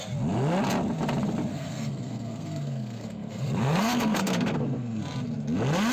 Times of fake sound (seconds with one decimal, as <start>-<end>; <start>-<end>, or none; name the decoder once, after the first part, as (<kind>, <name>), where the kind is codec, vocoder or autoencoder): 1.5-5.0 (codec, SNAC)